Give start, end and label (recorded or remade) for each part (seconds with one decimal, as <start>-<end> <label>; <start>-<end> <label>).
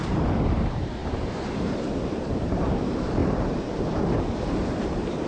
0.0-5.3 remade